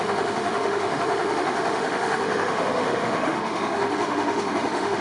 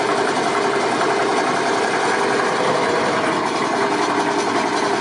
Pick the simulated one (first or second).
first